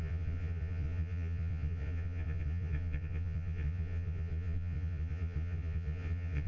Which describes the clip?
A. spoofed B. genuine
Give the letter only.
A